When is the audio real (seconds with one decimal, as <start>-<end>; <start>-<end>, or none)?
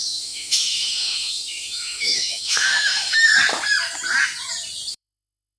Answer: 3.3-4.9